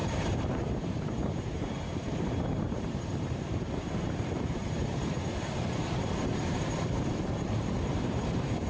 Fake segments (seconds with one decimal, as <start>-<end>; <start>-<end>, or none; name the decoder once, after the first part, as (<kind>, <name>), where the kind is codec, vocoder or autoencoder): 0.0-8.7 (vocoder, BigVGAN v2)